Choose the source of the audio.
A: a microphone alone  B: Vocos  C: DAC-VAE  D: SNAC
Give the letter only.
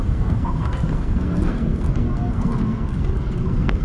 D